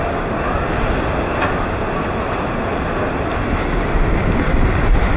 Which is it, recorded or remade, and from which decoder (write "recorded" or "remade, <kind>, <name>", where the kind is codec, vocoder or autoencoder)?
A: recorded